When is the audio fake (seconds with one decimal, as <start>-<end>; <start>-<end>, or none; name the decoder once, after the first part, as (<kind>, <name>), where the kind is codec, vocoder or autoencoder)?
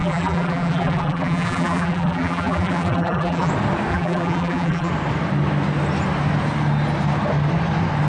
0.0-3.5 (vocoder, BigVGAN v2); 3.9-4.9